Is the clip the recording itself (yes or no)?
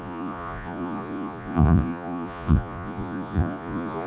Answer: no